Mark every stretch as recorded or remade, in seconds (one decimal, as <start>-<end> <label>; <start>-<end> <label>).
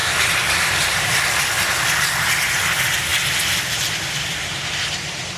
0.0-1.4 remade; 1.4-5.4 recorded